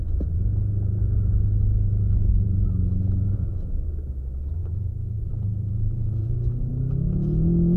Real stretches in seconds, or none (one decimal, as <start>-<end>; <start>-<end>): 0.0-2.2; 2.8-4.6; 6.7-7.8